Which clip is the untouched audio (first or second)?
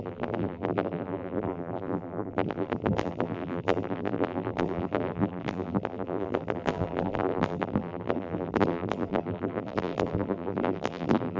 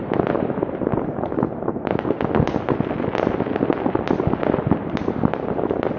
second